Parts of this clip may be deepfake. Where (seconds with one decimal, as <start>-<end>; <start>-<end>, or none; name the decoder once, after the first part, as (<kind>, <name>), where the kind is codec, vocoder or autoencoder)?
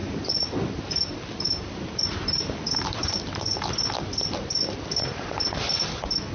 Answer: none